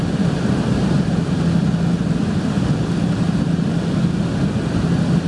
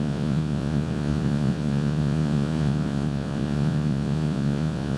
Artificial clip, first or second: second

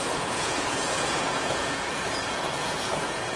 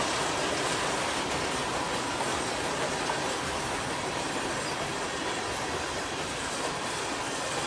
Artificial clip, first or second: first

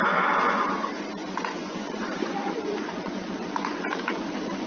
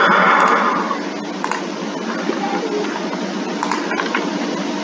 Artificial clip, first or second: first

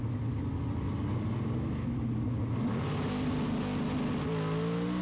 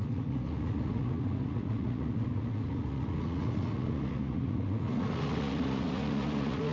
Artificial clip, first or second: second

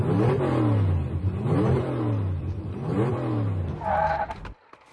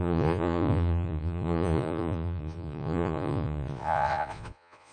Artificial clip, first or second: second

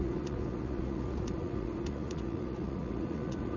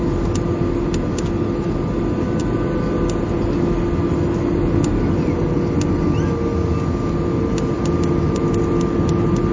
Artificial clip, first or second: first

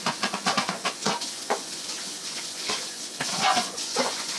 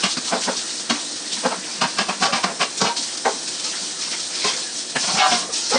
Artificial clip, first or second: first